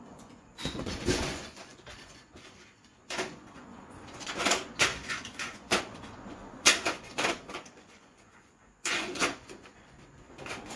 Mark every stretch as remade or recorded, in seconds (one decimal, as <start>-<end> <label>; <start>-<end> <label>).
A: 0.0-10.8 remade